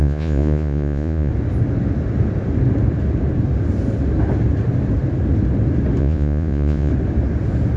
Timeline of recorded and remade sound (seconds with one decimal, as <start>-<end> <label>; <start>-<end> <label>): 0.0-1.3 remade; 1.3-6.0 recorded; 6.0-6.9 remade; 6.9-7.8 recorded